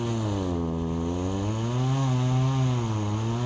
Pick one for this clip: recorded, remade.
recorded